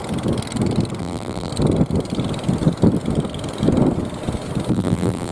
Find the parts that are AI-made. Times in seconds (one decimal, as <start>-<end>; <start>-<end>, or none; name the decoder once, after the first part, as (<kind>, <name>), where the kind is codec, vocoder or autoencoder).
1.0-1.5 (vocoder, BigVGAN v2); 4.7-5.3